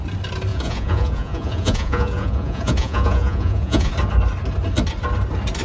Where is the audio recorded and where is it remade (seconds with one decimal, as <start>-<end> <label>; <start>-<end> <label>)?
0.0-0.5 recorded; 0.5-3.9 remade; 3.9-5.6 recorded